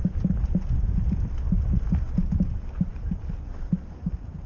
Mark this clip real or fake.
fake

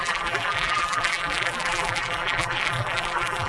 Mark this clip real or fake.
fake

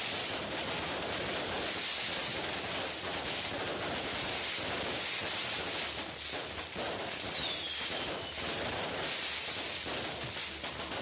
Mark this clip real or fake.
real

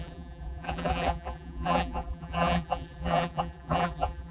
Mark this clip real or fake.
fake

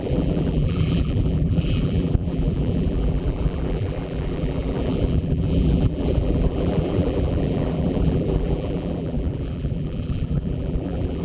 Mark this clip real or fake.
fake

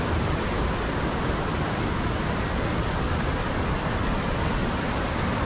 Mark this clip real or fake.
real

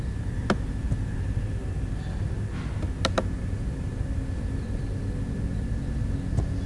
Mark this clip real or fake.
real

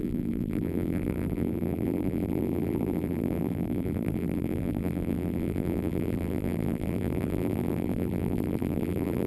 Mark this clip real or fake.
fake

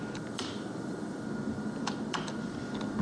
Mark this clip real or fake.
fake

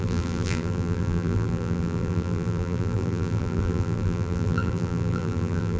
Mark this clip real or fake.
fake